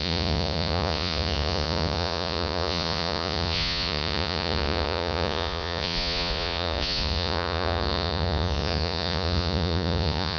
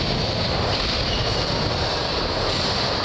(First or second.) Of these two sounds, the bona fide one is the second